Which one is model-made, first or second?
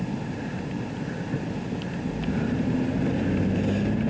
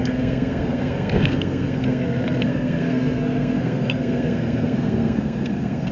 second